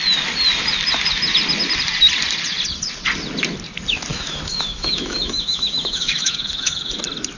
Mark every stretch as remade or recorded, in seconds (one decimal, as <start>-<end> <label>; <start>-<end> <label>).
0.0-4.1 recorded; 4.1-7.0 remade; 7.0-7.4 recorded